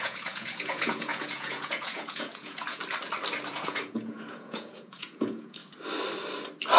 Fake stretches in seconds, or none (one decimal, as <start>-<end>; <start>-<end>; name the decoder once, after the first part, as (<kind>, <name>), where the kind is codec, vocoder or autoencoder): 0.0-2.8 (vocoder, Vocos); 3.5-5.6